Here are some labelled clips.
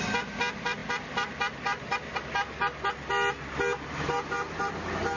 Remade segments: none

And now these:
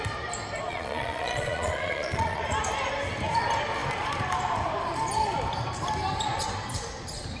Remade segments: 0.7-2.4 (vocoder, Vocos)

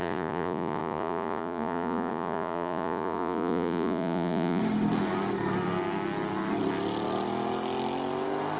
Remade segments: 0.0-4.6 (vocoder, Vocos)

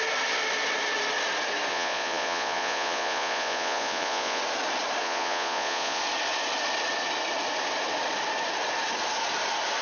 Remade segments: 1.7-4.4 (vocoder, Vocos); 5.0-6.0

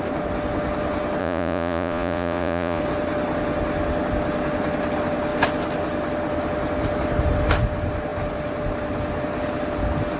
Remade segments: 1.2-2.8 (vocoder, Vocos)

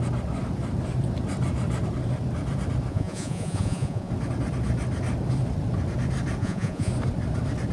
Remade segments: 2.9-4.1 (vocoder, Vocos); 6.4-6.9